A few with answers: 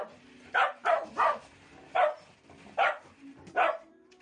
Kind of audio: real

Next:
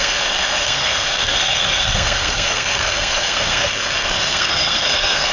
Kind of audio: fake